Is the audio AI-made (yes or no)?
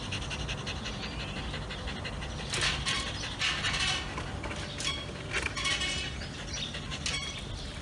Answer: no